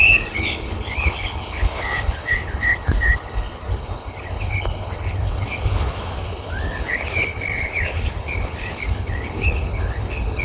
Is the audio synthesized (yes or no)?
yes